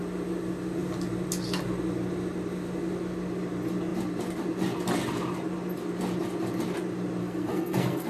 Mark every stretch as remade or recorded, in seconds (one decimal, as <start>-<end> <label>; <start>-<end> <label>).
0.0-7.2 recorded; 7.2-8.1 remade